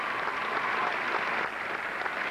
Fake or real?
real